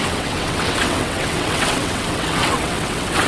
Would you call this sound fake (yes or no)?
yes